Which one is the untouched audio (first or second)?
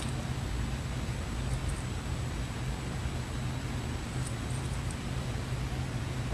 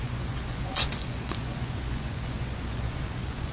first